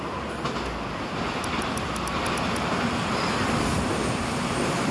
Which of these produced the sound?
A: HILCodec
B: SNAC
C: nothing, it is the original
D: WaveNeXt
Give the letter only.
C